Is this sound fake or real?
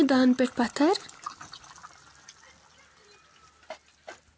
real